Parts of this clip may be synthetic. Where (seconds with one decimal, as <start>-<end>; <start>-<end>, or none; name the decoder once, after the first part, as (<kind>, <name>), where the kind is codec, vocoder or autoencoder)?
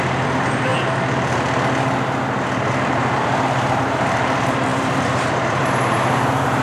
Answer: 0.0-0.7 (vocoder, BigVGAN v2); 2.7-6.6